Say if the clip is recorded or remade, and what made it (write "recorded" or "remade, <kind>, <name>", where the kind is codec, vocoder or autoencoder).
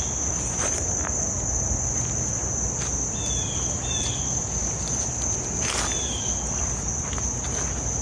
recorded